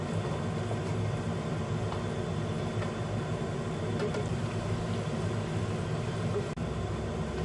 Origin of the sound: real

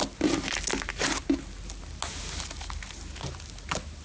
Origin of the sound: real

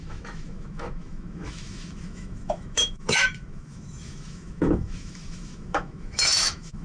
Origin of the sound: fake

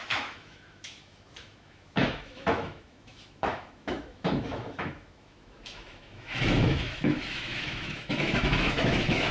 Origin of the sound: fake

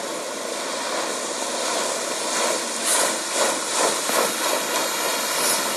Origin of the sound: real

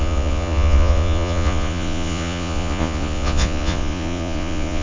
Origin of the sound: fake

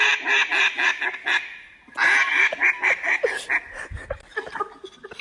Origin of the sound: real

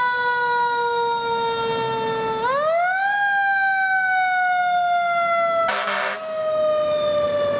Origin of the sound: real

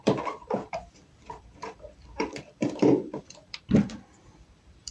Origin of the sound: fake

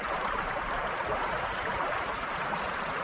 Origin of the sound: real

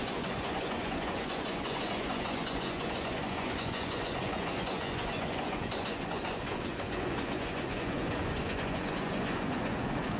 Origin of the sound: fake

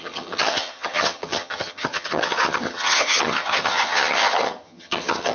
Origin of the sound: fake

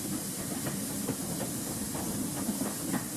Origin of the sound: real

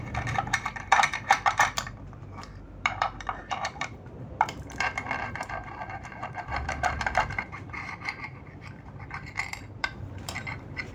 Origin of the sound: fake